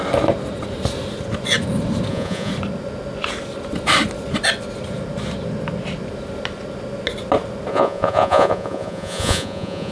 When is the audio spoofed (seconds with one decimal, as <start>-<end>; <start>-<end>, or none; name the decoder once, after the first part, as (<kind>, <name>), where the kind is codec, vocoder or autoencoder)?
2.1-2.5 (vocoder, Vocos); 7.7-9.9